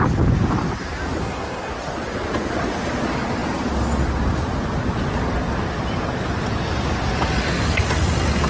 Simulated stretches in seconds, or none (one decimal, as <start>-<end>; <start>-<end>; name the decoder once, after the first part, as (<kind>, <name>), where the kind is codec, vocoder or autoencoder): 1.2-1.7 (codec, SNAC)